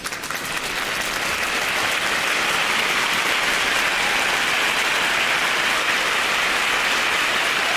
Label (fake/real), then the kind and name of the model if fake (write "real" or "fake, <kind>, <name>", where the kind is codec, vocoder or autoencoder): real